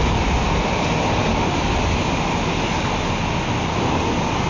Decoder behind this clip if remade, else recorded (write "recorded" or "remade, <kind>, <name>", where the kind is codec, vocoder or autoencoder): recorded